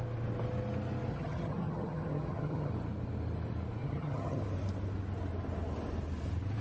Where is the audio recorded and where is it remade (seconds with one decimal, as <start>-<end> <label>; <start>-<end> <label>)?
0.0-1.1 recorded; 1.1-2.7 remade; 2.7-3.8 recorded; 3.8-4.4 remade; 4.4-6.6 recorded

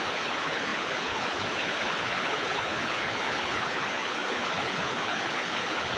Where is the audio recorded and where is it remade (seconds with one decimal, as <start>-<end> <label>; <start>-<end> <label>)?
0.0-6.0 remade